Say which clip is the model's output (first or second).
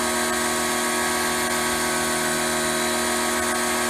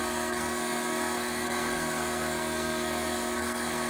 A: second